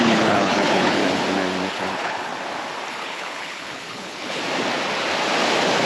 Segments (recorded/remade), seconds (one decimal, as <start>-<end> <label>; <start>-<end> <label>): 0.0-1.0 remade; 1.0-1.7 recorded; 1.7-2.3 remade; 2.3-2.9 recorded; 2.9-4.4 remade; 4.4-5.9 recorded